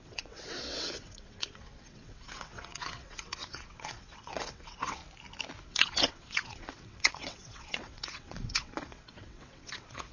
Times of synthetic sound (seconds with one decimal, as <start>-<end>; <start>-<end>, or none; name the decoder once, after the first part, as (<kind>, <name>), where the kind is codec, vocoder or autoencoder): 0.0-5.0 (vocoder, WaveNeXt); 5.6-10.1